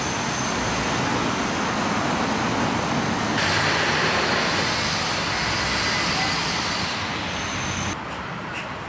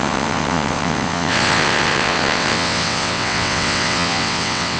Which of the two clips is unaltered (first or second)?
first